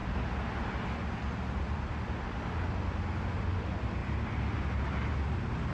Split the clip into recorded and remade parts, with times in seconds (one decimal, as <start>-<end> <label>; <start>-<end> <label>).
0.0-5.7 recorded

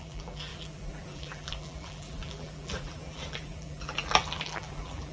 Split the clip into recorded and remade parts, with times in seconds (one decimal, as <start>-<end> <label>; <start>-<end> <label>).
0.0-5.1 remade

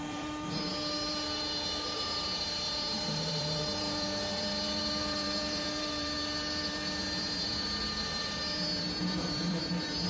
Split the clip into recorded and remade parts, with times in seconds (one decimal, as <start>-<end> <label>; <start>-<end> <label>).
0.0-10.1 remade

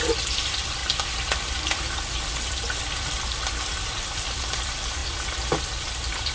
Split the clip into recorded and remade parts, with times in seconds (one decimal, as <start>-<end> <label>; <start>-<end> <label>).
0.0-0.8 remade; 0.8-2.8 recorded; 2.8-5.0 remade; 5.0-5.6 recorded; 5.6-6.3 remade

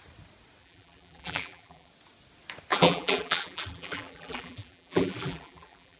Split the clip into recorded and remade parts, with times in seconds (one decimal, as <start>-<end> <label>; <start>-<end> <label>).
0.0-0.6 recorded; 0.6-1.9 remade; 1.9-2.7 recorded; 2.7-6.0 remade

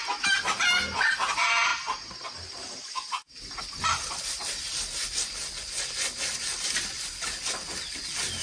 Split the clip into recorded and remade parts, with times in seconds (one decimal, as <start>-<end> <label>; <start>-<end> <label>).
0.0-8.4 recorded